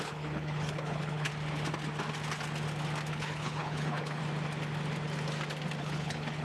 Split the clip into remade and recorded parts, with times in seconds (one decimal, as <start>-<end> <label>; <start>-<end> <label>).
0.0-1.3 remade; 1.3-3.1 recorded; 3.1-4.2 remade; 4.2-5.8 recorded; 5.8-6.4 remade